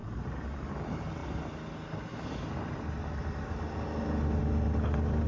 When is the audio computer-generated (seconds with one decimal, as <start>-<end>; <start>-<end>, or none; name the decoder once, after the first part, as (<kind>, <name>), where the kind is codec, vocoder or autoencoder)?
none